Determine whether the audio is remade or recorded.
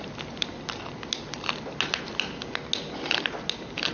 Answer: recorded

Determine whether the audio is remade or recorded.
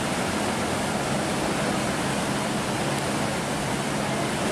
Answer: recorded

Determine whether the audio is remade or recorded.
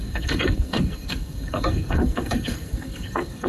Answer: remade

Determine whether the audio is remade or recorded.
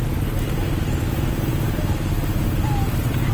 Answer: recorded